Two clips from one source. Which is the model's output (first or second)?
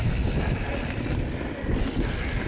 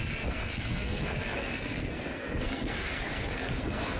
second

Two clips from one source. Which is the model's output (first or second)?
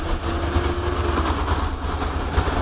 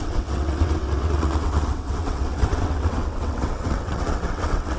second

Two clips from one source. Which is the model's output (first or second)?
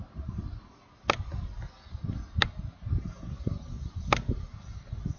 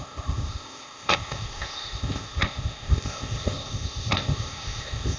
second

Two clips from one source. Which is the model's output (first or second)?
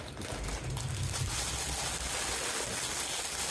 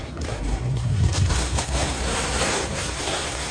second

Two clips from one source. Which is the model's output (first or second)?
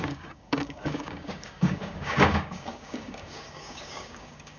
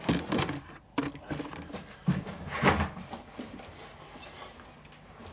first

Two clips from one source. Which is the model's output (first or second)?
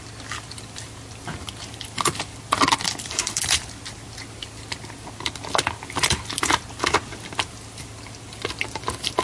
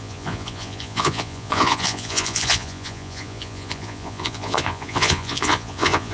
second